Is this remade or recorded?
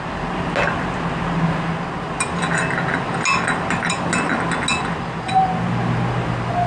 recorded